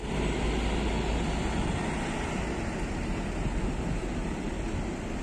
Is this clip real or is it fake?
real